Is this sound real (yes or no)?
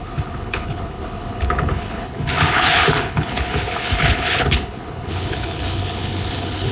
no